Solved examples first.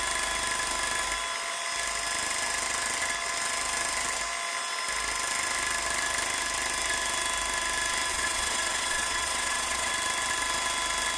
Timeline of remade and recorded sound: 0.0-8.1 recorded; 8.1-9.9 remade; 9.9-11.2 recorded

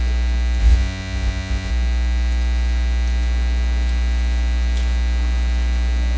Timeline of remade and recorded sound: 0.0-0.6 recorded; 0.6-1.7 remade; 1.7-6.2 recorded

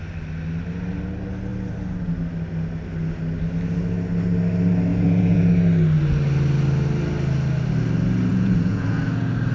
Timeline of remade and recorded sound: 0.0-4.9 recorded; 4.9-5.5 remade; 5.5-8.3 recorded; 8.3-9.0 remade; 9.0-9.5 recorded

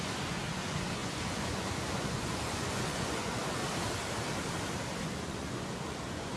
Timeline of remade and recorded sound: 0.0-3.6 remade; 3.6-5.0 recorded; 5.0-6.4 remade

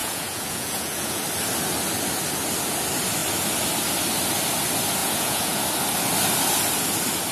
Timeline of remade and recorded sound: 0.0-1.2 remade; 1.2-5.0 recorded; 5.0-5.6 remade; 5.6-7.3 recorded

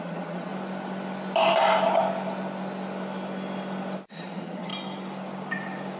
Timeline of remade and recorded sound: 0.0-0.5 remade; 0.5-4.1 recorded; 4.1-4.7 remade; 4.7-6.0 recorded

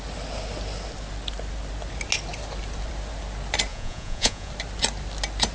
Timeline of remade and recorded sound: 0.0-3.7 recorded; 3.7-4.5 remade; 4.5-5.5 recorded

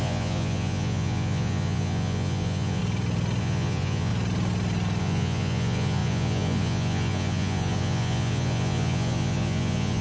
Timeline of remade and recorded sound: 0.0-2.8 remade; 2.8-3.4 recorded; 3.4-4.1 remade; 4.1-5.0 recorded; 5.0-10.0 remade